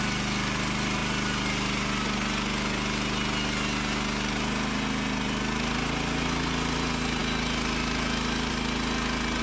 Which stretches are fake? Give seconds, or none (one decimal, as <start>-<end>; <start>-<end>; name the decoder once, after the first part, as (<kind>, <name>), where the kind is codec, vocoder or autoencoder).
none